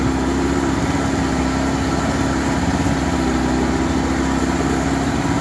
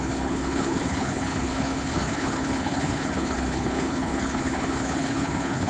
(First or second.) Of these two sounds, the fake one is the second